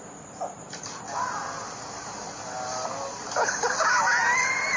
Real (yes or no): yes